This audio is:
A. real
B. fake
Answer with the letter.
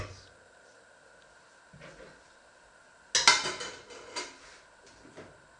A